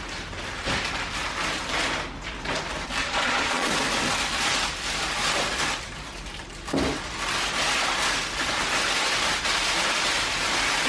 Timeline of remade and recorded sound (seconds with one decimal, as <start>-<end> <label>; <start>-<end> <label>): 0.0-3.0 recorded; 3.0-3.7 remade; 3.7-10.9 recorded